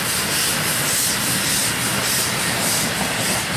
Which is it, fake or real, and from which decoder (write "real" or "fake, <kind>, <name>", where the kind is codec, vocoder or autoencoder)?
real